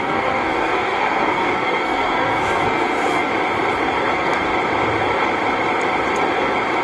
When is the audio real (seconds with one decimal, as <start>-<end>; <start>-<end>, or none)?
3.3-4.1; 4.5-6.8